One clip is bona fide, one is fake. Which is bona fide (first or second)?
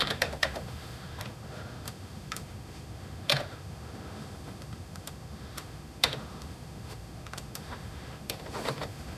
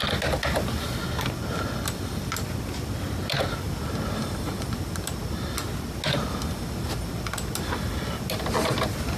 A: second